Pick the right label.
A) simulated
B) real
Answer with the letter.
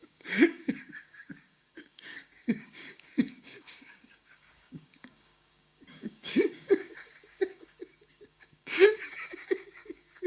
A